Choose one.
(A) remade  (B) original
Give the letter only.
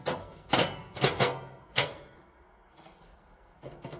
A